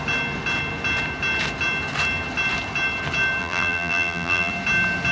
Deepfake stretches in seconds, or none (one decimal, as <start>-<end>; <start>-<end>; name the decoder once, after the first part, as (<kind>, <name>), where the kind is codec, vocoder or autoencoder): 3.4-4.5 (vocoder, BigVGAN v2)